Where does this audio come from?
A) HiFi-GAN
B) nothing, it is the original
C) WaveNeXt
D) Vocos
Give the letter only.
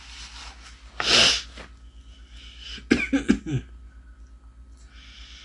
B